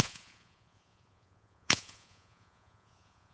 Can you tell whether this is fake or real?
fake